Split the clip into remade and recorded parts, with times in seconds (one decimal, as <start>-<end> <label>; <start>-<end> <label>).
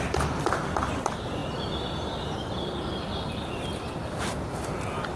0.0-1.4 remade; 1.4-4.5 recorded; 4.5-5.2 remade